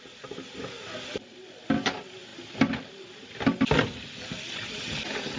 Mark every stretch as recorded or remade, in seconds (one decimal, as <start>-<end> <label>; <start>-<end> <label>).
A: 0.0-5.4 recorded